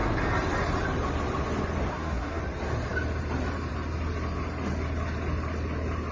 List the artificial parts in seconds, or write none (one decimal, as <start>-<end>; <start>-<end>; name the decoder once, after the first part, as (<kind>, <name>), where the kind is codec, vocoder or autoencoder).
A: 1.9-2.4 (codec, SNAC)

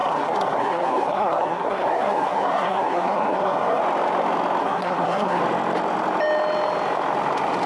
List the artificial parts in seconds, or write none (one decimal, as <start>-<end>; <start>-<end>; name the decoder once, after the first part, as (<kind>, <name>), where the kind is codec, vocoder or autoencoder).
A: 0.0-3.8 (codec, SNAC); 4.6-5.4

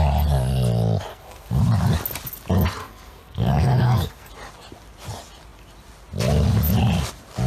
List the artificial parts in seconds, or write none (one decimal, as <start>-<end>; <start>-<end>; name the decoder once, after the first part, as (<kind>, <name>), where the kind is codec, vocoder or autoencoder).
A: 1.1-1.6 (codec, SNAC); 2.8-4.3